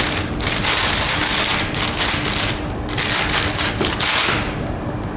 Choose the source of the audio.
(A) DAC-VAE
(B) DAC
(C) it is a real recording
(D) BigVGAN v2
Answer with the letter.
C